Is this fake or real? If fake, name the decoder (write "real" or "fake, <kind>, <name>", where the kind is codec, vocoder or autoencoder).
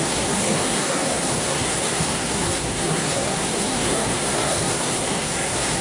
fake, codec, SNAC